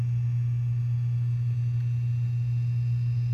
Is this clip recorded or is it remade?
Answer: recorded